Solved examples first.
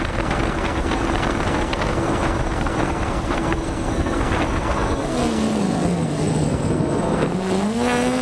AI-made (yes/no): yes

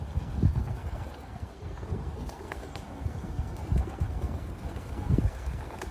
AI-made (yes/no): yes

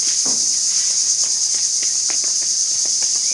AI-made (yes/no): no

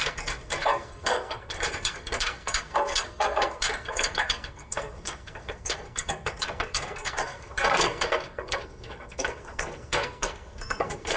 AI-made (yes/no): yes